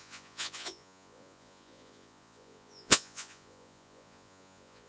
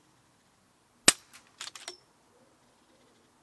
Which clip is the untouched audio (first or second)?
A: second